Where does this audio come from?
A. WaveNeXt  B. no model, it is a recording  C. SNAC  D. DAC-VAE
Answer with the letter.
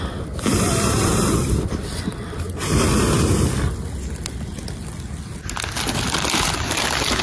B